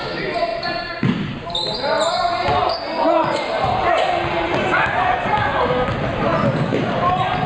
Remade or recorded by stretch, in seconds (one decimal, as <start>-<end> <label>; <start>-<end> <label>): 0.0-0.5 recorded; 0.5-3.9 remade; 3.9-7.5 recorded